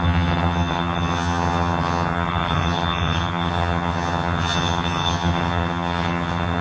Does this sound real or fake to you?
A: fake